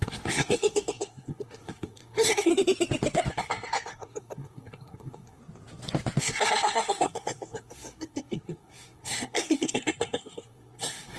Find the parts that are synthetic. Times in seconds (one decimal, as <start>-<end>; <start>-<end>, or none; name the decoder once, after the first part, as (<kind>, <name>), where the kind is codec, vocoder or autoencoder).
0.0-2.5 (codec, SNAC); 3.3-5.4; 6.2-11.2